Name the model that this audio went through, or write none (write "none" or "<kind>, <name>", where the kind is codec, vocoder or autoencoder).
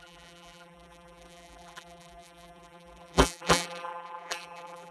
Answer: vocoder, BigVGAN v2